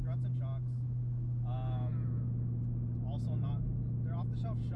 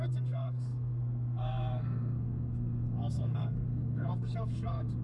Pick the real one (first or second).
first